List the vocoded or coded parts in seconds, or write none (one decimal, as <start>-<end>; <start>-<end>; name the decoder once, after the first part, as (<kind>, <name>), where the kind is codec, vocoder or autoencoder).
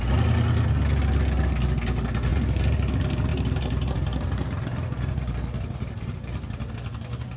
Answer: 2.3-2.9 (vocoder, BigVGAN v2); 3.3-6.7